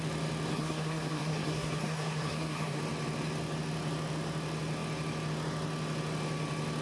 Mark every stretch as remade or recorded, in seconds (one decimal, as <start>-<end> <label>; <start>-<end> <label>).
0.0-0.5 recorded; 0.5-2.8 remade; 2.8-6.8 recorded